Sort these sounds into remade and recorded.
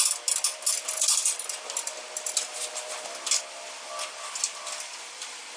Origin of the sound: recorded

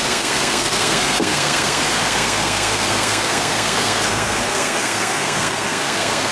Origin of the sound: remade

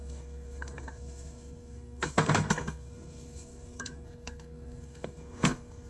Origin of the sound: remade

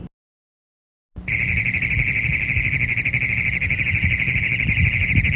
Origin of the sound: recorded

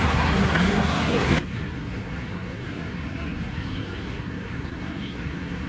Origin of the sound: remade